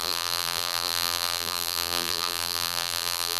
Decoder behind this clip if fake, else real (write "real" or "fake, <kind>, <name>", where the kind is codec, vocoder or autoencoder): fake, vocoder, BigVGAN v2